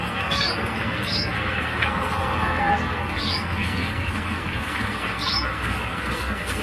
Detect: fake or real fake